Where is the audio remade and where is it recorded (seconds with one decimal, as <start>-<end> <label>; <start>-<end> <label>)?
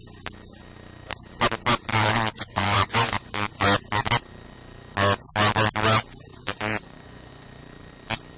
0.0-1.9 recorded; 1.9-3.5 remade; 3.5-6.3 recorded; 6.3-7.6 remade; 7.6-8.4 recorded